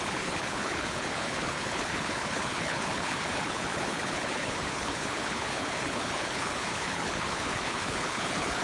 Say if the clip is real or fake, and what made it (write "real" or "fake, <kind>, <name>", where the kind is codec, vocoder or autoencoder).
fake, codec, HILCodec